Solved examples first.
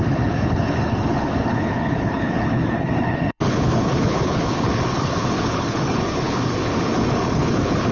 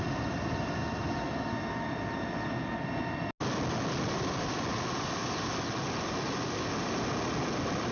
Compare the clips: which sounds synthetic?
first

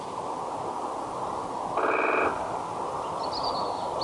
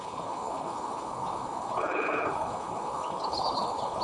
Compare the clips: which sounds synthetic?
second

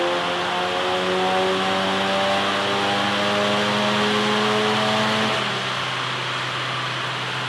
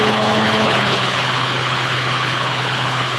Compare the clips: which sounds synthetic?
second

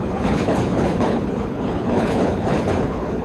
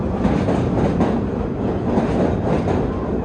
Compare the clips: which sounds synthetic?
first